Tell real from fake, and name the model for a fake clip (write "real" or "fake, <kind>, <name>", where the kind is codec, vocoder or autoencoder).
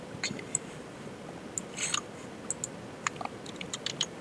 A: real